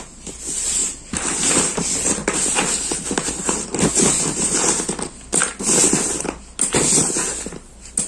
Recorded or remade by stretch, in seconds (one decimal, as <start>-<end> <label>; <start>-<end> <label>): 0.0-8.1 recorded